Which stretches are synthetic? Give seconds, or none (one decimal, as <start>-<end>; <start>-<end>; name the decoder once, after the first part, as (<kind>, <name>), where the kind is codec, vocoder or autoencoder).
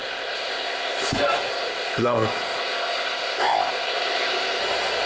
0.0-1.1 (codec, ZipCodec); 1.5-4.6